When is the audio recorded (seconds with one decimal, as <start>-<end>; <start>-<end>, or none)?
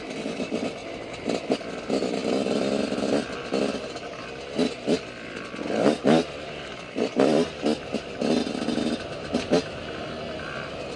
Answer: 0.0-11.0